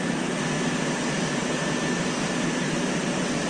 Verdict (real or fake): real